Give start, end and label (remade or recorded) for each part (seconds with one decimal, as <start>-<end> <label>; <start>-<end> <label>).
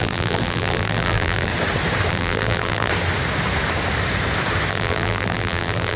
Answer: 0.0-1.5 remade; 1.5-2.1 recorded; 2.1-2.9 remade; 2.9-4.7 recorded; 4.7-6.0 remade